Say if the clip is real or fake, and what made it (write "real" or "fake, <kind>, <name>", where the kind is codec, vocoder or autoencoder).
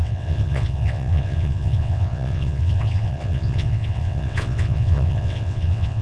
fake, vocoder, WaveNeXt